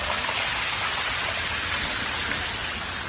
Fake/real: real